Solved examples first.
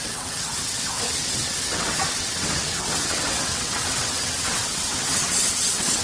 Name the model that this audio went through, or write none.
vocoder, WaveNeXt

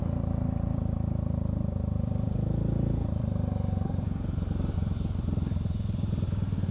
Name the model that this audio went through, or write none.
vocoder, BigVGAN v2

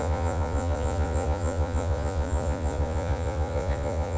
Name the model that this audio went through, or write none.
vocoder, Vocos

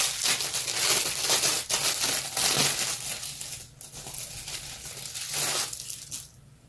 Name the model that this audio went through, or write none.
none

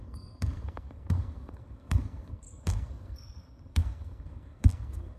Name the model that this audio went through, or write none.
codec, SNAC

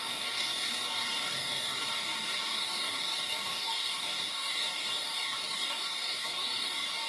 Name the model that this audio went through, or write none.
codec, DAC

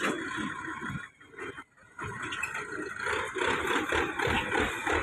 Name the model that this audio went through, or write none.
none